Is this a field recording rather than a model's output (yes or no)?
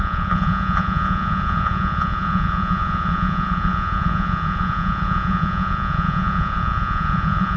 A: no